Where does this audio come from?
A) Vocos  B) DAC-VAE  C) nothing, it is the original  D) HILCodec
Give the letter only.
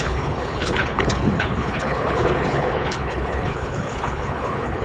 D